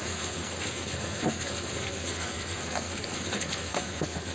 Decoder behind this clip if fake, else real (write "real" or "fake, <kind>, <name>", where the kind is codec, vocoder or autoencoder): fake, codec, SNAC